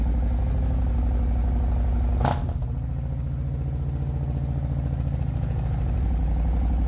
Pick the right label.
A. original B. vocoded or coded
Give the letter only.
A